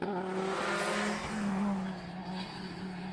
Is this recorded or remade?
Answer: recorded